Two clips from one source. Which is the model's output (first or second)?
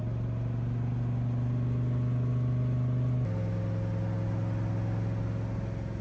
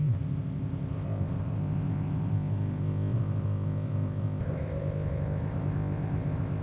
second